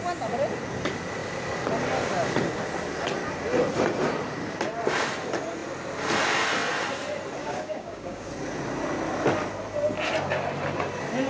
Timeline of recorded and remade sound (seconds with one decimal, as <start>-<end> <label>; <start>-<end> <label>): 0.0-7.4 recorded; 7.4-8.3 remade; 8.3-11.3 recorded